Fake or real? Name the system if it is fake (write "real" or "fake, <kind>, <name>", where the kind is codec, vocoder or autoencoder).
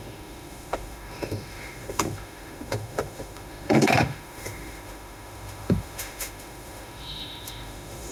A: fake, autoencoder, DAC-VAE